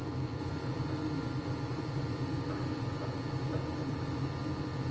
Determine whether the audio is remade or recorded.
remade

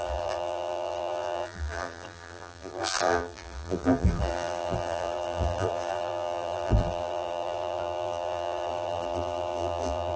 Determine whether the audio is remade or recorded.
remade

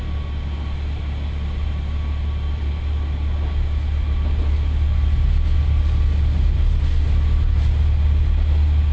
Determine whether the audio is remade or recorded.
recorded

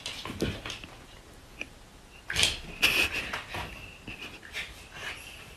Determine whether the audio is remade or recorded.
recorded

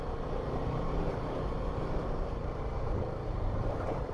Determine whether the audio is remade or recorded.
remade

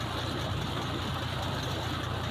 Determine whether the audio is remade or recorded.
recorded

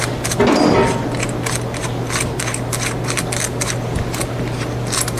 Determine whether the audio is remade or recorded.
recorded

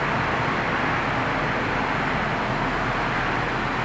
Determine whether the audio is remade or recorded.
recorded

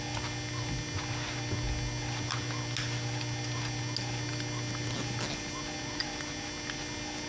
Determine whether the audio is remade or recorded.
recorded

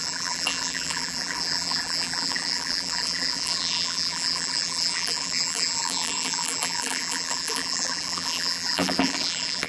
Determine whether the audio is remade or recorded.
remade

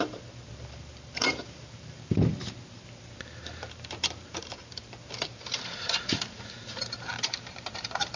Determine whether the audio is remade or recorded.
remade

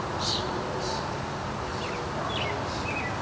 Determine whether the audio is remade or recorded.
recorded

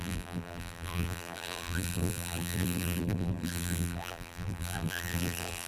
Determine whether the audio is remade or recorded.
remade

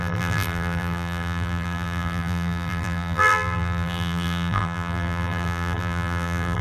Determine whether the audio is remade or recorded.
remade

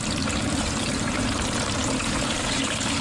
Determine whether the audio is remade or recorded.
remade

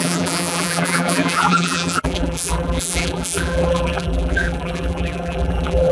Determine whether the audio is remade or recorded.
remade